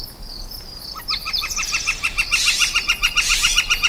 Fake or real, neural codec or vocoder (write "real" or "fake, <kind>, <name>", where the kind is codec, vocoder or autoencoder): fake, vocoder, BigVGAN v2